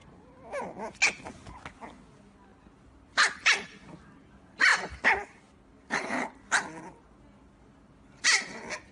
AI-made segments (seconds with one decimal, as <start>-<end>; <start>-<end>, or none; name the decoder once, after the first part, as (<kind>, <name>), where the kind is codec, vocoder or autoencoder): none